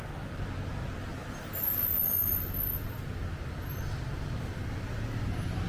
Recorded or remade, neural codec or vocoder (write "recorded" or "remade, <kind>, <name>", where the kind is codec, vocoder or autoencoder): recorded